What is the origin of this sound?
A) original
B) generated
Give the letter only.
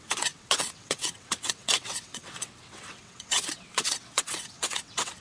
B